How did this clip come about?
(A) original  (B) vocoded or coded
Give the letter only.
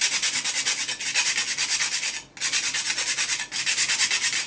A